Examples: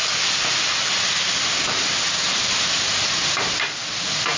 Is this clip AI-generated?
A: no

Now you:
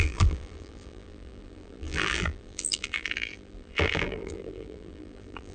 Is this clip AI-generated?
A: yes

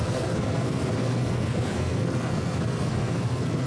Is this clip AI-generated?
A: yes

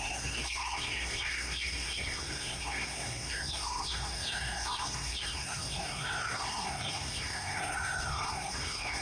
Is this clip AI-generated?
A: yes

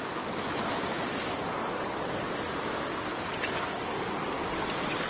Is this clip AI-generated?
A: no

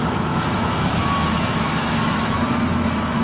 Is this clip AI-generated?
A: yes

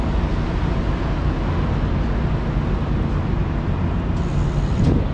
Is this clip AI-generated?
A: no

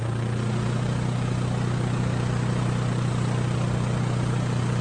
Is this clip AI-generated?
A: no